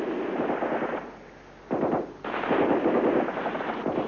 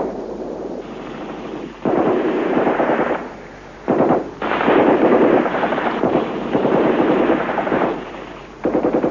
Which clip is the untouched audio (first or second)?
first